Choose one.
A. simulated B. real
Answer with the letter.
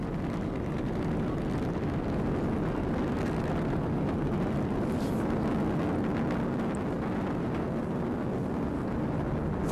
B